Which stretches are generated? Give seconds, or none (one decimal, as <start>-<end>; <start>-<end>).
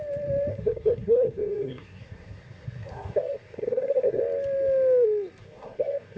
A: 0.5-4.2; 5.4-6.2